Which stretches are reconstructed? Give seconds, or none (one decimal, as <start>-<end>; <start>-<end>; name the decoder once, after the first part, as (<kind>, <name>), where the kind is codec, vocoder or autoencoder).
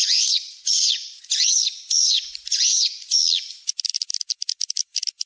0.0-3.2 (vocoder, Vocos)